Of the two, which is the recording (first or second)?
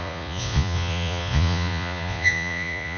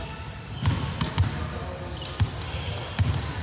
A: second